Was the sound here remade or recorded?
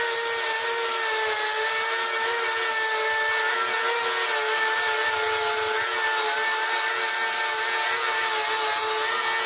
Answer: recorded